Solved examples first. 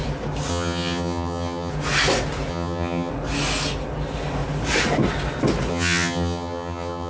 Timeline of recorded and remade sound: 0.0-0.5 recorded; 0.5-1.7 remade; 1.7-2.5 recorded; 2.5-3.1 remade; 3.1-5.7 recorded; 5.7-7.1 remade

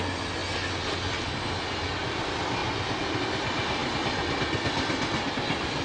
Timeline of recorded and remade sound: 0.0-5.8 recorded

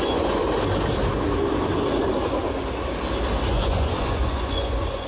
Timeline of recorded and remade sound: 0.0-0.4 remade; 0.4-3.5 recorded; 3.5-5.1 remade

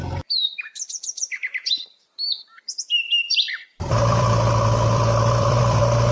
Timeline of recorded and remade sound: 0.0-6.1 remade